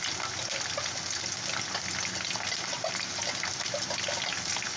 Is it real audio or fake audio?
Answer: real